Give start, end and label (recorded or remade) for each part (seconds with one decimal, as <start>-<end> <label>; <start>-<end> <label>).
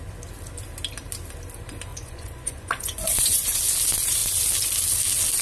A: 0.0-1.9 recorded; 1.9-3.6 remade; 3.6-5.4 recorded